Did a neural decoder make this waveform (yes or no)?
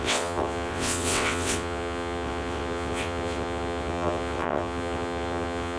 yes